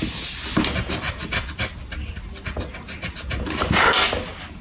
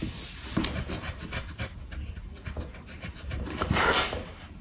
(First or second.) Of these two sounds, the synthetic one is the second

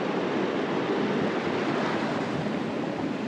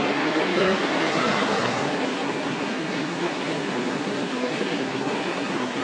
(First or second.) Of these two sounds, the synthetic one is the second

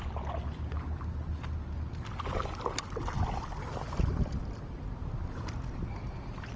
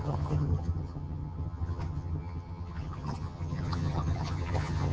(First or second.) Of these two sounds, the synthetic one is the second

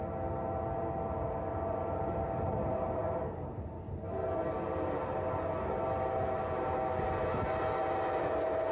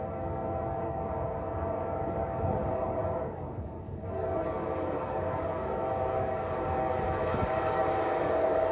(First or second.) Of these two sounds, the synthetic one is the second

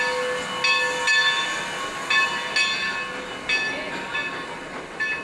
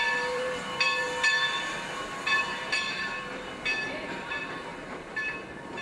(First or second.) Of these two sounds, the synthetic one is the second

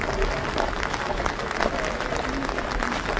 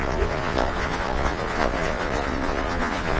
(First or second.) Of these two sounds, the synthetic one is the second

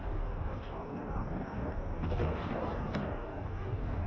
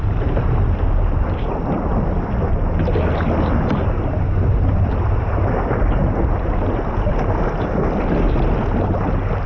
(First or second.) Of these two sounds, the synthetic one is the first